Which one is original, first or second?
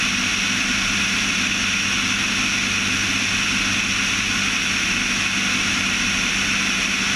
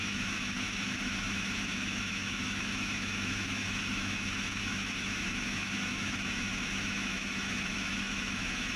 first